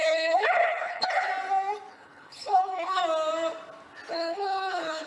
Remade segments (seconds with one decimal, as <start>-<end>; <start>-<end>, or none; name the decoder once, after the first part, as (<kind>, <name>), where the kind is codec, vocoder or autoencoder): 0.0-1.3 (codec, HILCodec); 1.9-3.0; 4.1-5.1